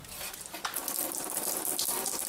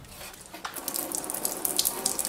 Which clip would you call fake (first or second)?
first